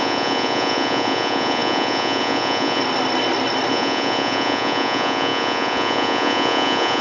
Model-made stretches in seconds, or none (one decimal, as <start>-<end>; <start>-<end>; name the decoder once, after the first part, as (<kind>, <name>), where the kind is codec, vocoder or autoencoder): 0.0-2.8 (vocoder, Vocos); 3.7-7.0